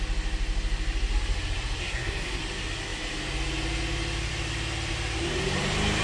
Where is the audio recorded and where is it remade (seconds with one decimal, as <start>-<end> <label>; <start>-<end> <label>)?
0.0-1.8 recorded; 1.8-2.4 remade; 2.4-6.0 recorded